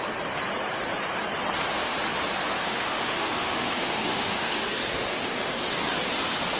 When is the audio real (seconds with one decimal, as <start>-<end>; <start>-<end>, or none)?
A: 0.0-2.6; 4.5-6.6